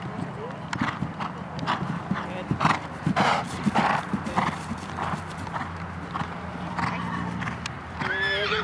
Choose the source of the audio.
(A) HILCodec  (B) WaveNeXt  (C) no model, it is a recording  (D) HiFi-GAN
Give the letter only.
C